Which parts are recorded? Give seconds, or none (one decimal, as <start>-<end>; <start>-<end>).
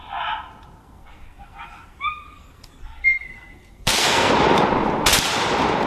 0.0-0.8; 4.3-5.9